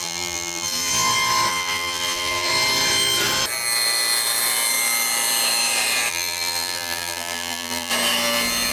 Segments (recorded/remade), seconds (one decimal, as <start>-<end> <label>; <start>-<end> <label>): 0.0-0.9 remade; 0.9-1.5 recorded; 1.5-2.5 remade; 2.5-6.1 recorded; 6.1-7.9 remade; 7.9-8.7 recorded